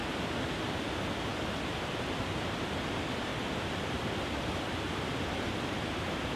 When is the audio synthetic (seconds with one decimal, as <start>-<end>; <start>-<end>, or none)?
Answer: 1.3-1.9; 3.3-4.8